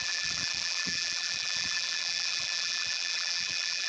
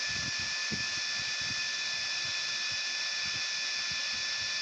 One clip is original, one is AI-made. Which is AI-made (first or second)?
first